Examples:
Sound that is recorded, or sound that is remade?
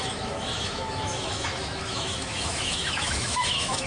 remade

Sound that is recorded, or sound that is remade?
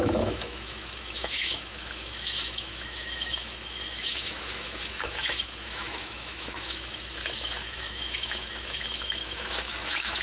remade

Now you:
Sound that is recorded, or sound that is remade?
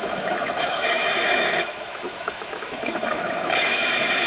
remade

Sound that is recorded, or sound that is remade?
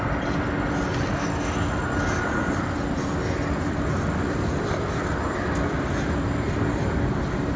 recorded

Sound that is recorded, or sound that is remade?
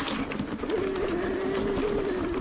recorded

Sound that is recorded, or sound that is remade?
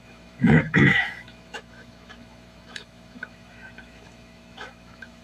remade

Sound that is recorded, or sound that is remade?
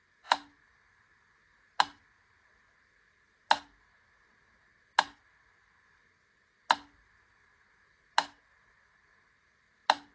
recorded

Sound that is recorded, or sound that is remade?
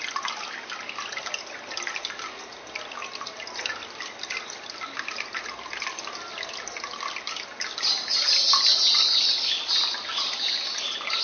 recorded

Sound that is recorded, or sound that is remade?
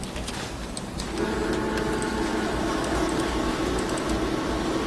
recorded